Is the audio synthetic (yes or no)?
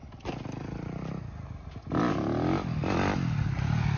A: no